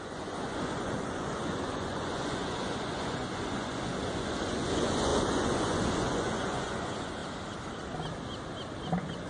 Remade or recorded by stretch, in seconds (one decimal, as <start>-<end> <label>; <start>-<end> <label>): 0.0-7.2 remade; 7.2-8.8 recorded; 8.8-9.3 remade